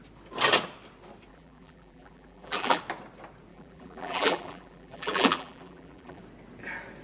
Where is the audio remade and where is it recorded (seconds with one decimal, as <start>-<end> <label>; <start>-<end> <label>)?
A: 0.0-1.3 recorded; 1.3-2.8 remade; 2.8-3.5 recorded; 3.5-6.2 remade; 6.2-7.0 recorded